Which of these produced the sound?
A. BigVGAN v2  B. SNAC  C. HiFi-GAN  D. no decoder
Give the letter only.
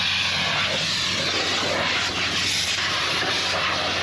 D